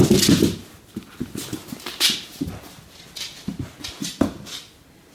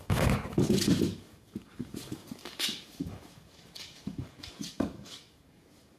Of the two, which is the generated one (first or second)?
second